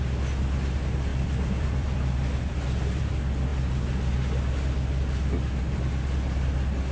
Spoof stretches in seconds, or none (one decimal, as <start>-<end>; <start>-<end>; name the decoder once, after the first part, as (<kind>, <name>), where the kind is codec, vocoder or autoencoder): 1.1-3.1 (vocoder, BigVGAN v2)